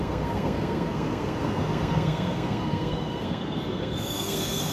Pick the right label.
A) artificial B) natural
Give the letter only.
A